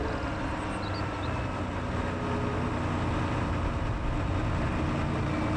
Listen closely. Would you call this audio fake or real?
real